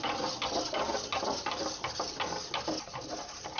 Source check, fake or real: real